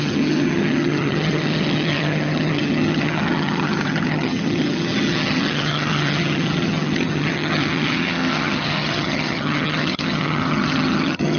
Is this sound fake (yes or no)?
yes